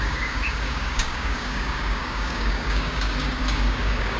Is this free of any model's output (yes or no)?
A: no